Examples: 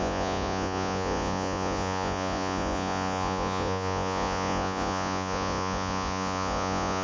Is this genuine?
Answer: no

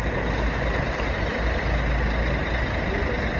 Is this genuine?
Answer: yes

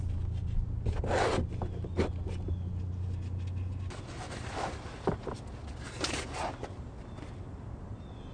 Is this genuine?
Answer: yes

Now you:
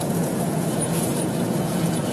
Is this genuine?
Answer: no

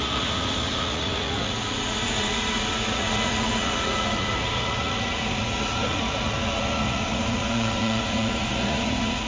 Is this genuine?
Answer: no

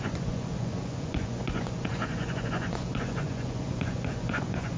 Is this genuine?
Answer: no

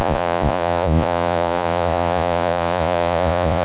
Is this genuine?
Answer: no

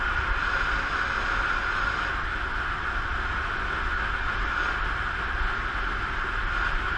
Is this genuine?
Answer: yes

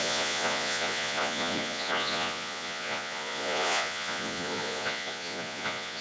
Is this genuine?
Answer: no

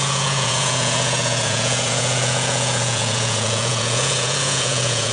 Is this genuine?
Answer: no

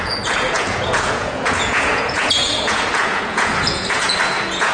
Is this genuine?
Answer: no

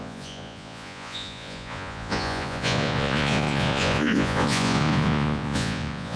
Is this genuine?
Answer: no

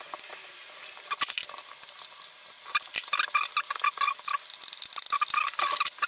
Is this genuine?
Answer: yes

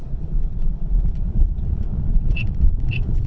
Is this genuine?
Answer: no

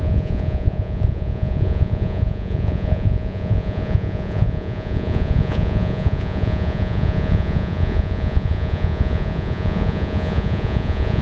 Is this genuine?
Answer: no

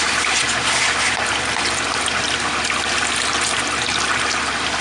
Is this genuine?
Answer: yes